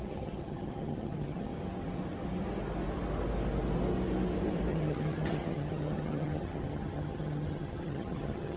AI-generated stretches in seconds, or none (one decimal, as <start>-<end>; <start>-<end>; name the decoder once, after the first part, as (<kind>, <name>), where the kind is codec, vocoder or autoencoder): 0.0-1.5 (vocoder, HiFi-GAN); 4.7-8.6